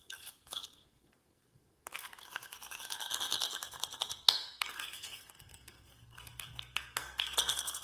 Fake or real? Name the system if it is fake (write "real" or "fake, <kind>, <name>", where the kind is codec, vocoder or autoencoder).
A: fake, codec, SNAC